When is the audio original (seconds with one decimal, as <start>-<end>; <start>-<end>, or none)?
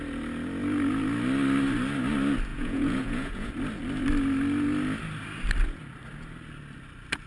0.0-2.5; 3.5-7.3